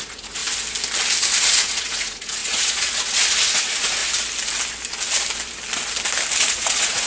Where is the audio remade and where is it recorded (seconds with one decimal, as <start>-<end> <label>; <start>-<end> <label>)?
0.0-0.4 remade; 0.4-1.4 recorded; 1.4-4.0 remade; 4.0-6.5 recorded; 6.5-7.1 remade